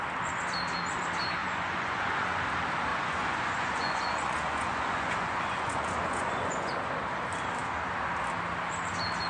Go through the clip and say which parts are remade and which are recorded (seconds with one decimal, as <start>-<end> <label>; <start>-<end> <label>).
0.0-1.4 recorded; 1.4-2.4 remade; 2.4-2.9 recorded; 2.9-6.7 remade; 6.7-9.3 recorded